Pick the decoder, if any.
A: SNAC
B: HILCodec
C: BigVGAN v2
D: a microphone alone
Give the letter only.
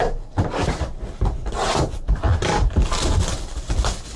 D